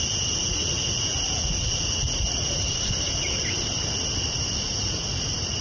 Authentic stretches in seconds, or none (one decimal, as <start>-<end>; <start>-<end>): 0.0-0.4; 2.7-4.7